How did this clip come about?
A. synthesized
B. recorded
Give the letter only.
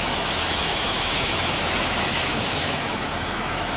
A